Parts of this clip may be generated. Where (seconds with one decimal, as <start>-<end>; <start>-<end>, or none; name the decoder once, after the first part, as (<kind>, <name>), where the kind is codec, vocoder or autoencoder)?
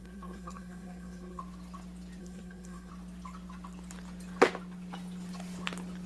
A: 0.0-1.4 (codec, SNAC); 2.2-2.9